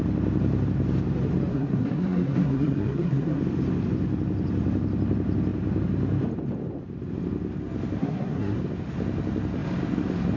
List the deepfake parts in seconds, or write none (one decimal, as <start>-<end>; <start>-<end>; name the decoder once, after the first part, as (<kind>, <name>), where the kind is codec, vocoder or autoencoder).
1.5-3.4 (codec, SNAC); 8.0-8.6